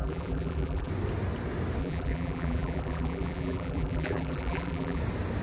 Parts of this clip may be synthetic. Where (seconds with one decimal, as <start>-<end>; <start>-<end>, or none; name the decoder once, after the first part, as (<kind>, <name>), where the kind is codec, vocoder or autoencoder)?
0.0-0.9 (vocoder, BigVGAN v2); 1.8-5.0